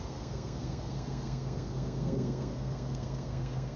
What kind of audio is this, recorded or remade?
remade